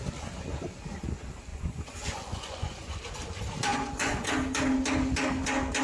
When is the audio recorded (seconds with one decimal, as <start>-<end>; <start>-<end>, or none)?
0.0-1.5; 3.0-3.7; 4.3-5.8